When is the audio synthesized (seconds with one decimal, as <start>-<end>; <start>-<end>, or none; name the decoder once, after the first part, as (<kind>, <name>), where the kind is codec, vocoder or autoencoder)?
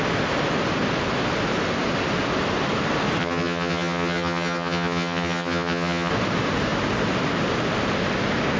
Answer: 3.2-6.1 (vocoder, HiFi-GAN)